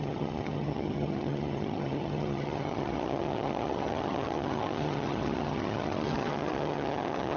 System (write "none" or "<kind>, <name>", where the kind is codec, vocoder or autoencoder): vocoder, HiFi-GAN